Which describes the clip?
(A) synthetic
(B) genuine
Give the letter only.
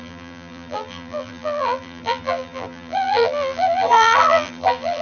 A